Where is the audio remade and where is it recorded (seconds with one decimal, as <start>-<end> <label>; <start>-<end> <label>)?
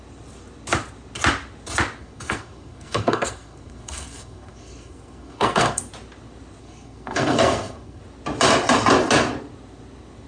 0.0-2.0 recorded; 2.0-5.8 remade; 5.8-6.6 recorded; 6.6-8.0 remade; 8.0-10.3 recorded